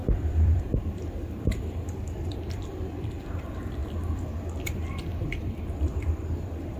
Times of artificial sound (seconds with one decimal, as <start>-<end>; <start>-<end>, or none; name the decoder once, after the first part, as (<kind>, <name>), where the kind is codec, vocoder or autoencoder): 0.0-6.8 (vocoder, BigVGAN v2)